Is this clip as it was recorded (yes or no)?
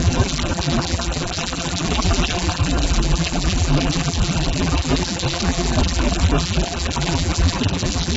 no